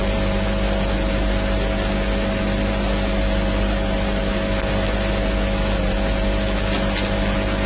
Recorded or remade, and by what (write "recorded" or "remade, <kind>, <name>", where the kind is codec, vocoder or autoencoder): recorded